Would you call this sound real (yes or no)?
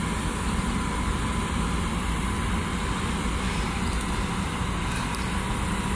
yes